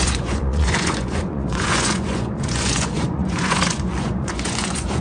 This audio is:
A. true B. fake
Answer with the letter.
B